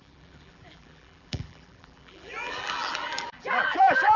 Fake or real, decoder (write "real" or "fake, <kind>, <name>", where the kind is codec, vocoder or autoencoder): fake, vocoder, BigVGAN v2